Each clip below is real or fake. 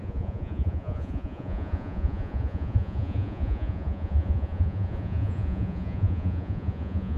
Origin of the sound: fake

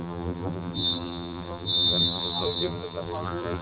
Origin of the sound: fake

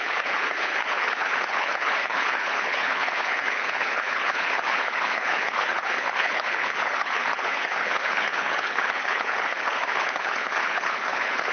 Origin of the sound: fake